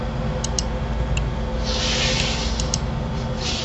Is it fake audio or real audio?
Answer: real